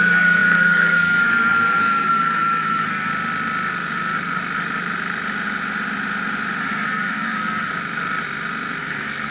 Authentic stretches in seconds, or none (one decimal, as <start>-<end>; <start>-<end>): 3.1-6.6; 7.7-8.8